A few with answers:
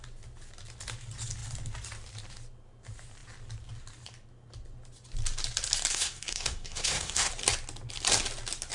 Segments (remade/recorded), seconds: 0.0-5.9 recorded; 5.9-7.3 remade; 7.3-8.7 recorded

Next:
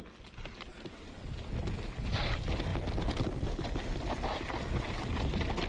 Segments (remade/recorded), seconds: 0.0-5.7 recorded

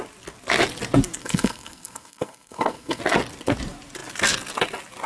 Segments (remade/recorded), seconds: 0.0-1.2 recorded; 1.2-3.0 remade; 3.0-5.1 recorded

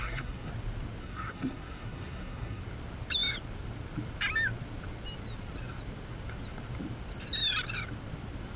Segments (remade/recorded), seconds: 0.0-0.5 remade; 0.5-1.0 recorded; 1.0-2.6 remade; 2.6-8.6 recorded

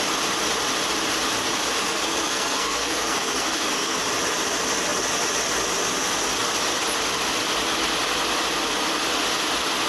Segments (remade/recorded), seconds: 0.0-1.8 recorded; 1.8-4.0 remade; 4.0-9.9 recorded

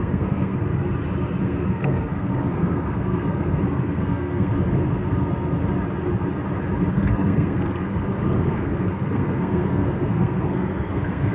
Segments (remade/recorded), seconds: 0.0-0.7 remade; 0.7-1.4 recorded; 1.4-5.6 remade; 5.6-6.9 recorded; 6.9-11.3 remade